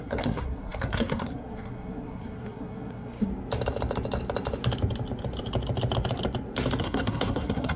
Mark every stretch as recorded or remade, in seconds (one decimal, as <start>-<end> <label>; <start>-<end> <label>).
0.0-3.3 remade; 3.3-6.8 recorded; 6.8-7.8 remade